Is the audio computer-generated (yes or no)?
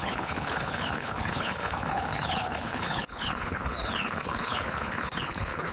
yes